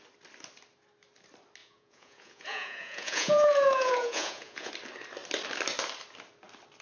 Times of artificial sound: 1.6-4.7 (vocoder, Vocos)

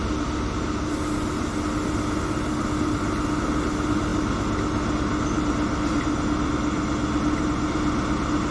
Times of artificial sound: none

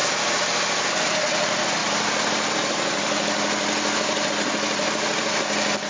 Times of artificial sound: none

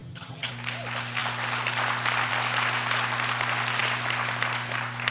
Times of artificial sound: 0.0-0.5 (vocoder, HiFi-GAN)